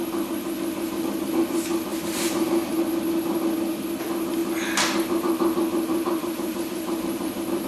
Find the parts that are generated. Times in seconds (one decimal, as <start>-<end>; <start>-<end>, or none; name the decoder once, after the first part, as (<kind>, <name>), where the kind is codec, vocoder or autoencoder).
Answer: 1.9-2.8 (vocoder, BigVGAN v2); 5.9-7.7

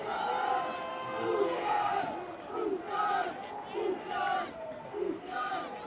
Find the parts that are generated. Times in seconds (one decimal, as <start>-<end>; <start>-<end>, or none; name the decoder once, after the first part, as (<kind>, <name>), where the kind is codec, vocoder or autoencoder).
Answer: 0.9-2.0 (codec, SNAC); 4.5-5.5